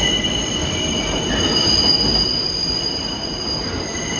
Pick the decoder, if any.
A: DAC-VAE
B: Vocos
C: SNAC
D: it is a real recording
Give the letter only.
D